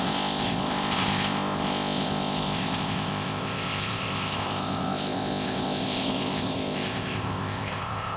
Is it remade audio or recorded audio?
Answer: remade